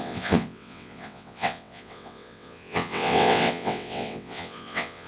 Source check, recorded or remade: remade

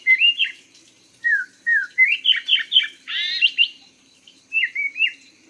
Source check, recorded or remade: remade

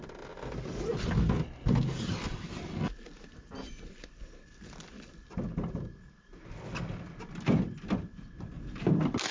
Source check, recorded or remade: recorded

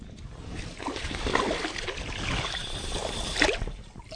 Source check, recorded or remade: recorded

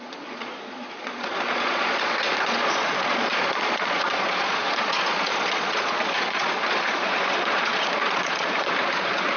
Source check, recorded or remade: remade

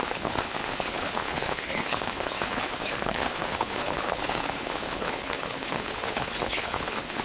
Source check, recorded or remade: remade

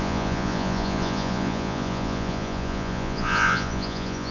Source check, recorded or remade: remade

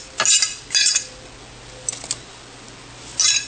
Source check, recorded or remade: recorded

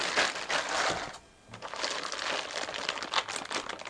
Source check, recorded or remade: recorded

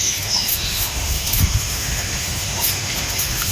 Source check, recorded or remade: remade